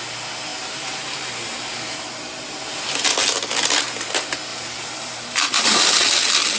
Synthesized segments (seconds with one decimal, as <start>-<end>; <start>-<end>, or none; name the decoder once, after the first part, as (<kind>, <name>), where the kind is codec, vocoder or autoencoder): 0.5-2.1 (vocoder, BigVGAN v2); 4.5-5.8